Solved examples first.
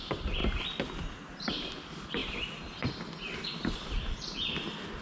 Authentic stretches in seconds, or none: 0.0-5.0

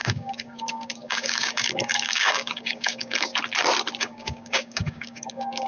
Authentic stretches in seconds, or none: 3.3-4.0

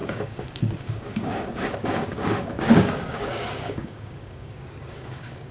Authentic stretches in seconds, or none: none

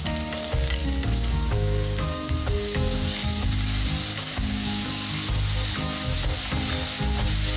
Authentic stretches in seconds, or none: 0.0-0.8; 3.5-4.1; 4.9-7.6

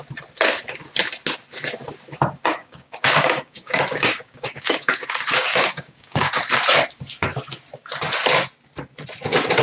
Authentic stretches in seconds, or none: 0.0-2.6; 6.3-9.6

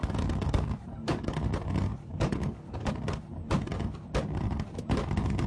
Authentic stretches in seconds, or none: 1.3-1.9; 2.9-5.5